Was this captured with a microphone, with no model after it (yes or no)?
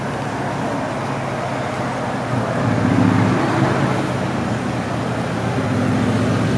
yes